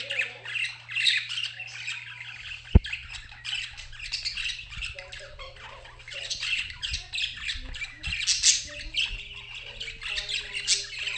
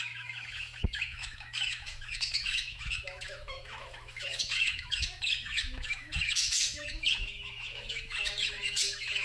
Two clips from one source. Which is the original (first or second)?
first